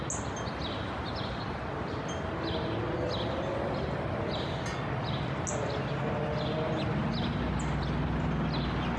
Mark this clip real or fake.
real